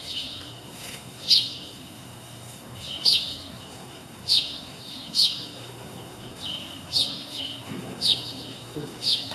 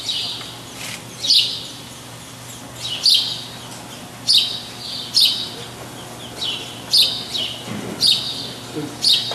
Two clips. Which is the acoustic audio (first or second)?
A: second